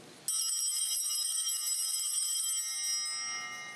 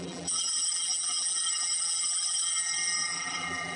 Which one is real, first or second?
first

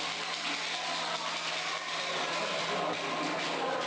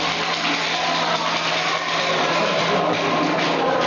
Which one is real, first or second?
first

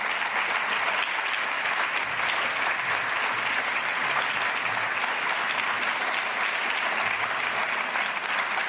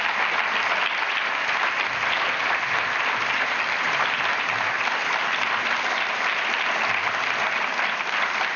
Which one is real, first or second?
first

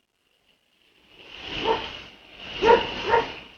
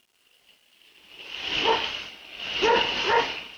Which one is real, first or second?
first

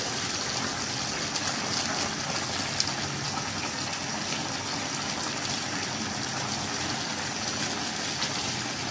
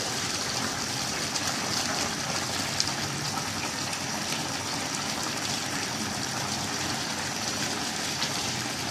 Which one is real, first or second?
first